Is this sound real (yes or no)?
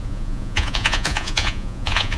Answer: no